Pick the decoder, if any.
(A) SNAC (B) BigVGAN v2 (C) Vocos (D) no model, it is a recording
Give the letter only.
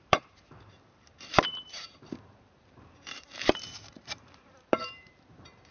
B